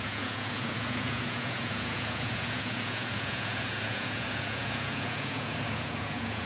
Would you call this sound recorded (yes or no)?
no